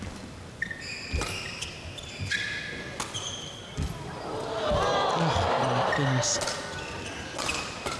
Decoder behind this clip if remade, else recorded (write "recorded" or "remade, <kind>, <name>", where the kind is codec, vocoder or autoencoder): recorded